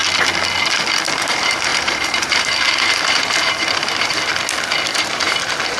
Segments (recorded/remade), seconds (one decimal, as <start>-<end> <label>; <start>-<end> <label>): 0.0-1.2 recorded; 1.2-4.3 remade; 4.3-4.9 recorded; 4.9-5.8 remade